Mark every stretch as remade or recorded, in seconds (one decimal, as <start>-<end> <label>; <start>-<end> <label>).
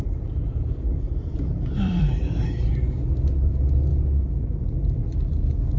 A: 0.0-0.9 recorded; 0.9-2.7 remade; 2.7-5.8 recorded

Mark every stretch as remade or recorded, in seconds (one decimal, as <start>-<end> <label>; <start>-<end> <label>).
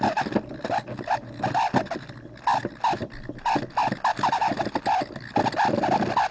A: 0.0-6.3 recorded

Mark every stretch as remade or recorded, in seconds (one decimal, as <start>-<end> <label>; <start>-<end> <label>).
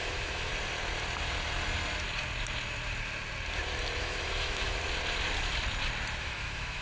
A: 0.0-0.5 remade; 0.5-4.0 recorded; 4.0-4.8 remade; 4.8-6.2 recorded; 6.2-6.8 remade